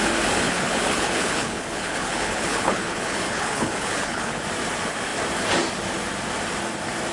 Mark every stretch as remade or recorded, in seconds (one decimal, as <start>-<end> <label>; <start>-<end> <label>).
0.0-0.4 recorded; 0.4-4.4 remade; 4.4-7.1 recorded